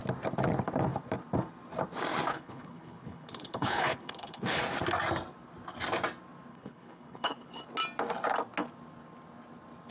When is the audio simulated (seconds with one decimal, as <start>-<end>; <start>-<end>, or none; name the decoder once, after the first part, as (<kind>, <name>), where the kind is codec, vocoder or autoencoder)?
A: 2.3-4.6 (codec, HILCodec); 6.5-7.5

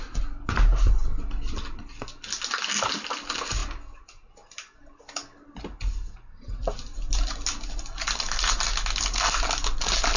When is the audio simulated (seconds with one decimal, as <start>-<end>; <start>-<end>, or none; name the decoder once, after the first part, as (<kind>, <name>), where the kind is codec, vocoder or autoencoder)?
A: none

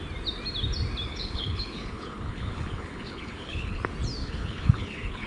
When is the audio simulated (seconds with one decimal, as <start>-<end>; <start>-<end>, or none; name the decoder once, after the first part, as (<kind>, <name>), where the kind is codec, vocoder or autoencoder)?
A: 1.1-3.8 (codec, HILCodec); 4.2-5.3

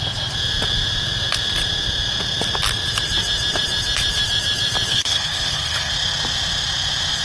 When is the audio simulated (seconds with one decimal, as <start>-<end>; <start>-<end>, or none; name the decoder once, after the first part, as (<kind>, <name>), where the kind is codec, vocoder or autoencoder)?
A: 4.9-5.9 (codec, HILCodec)

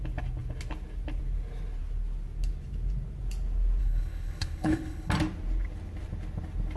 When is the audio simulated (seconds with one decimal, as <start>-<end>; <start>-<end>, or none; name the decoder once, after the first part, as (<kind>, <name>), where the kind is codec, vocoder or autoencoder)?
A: 3.8-5.1 (codec, HILCodec)

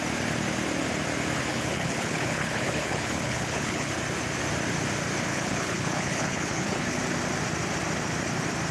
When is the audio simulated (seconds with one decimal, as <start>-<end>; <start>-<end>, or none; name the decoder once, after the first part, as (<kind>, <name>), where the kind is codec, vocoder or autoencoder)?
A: 1.5-3.9 (codec, HILCodec); 5.3-7.0